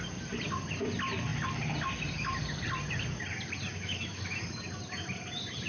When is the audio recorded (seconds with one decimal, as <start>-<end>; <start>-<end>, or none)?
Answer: 0.0-3.7; 4.4-5.7